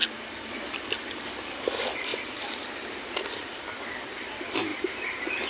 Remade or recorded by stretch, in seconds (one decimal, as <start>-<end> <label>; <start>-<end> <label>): 0.0-0.5 recorded; 0.5-4.7 remade; 4.7-5.5 recorded